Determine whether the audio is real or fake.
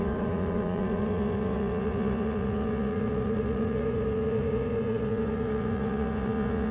fake